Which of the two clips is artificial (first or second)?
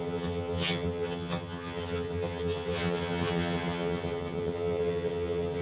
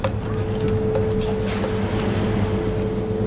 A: first